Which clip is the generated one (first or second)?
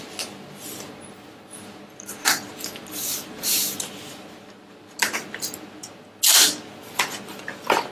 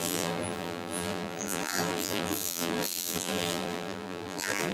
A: second